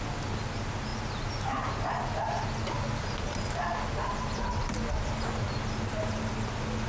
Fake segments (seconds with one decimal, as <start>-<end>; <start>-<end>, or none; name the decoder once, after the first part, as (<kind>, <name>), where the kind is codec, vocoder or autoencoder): none